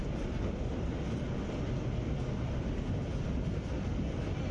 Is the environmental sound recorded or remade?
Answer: recorded